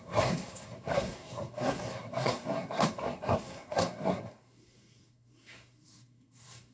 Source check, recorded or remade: remade